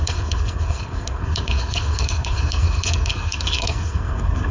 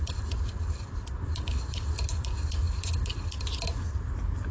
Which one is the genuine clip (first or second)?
second